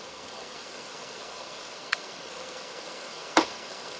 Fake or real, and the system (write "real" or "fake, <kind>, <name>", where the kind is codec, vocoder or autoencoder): fake, codec, SNAC